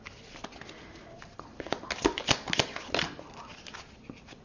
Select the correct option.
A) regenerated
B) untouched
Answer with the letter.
B